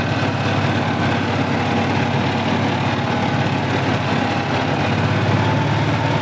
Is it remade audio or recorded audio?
recorded